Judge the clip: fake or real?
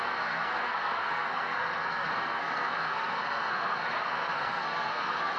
fake